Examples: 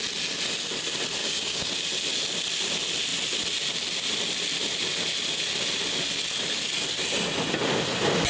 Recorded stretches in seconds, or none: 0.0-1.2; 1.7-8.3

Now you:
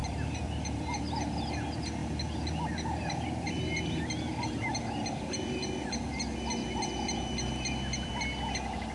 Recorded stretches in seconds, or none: 1.0-2.0; 3.6-6.6; 8.1-8.9

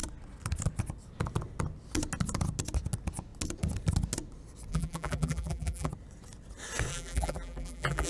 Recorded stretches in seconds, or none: 0.0-4.7; 5.9-6.9

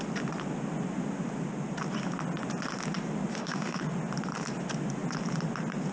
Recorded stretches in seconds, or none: 0.0-3.3; 3.8-5.9

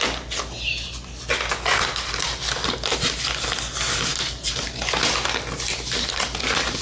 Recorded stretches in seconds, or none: 0.0-6.8

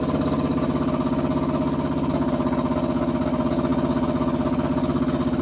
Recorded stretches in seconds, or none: 0.0-5.4

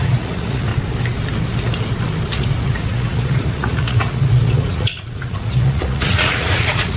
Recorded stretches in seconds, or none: 0.7-2.3